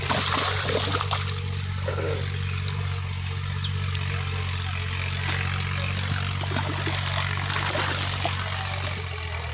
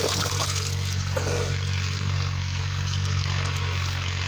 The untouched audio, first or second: first